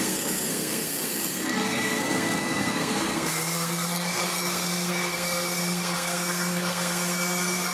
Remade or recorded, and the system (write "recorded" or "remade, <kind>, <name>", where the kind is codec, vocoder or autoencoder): remade, codec, SNAC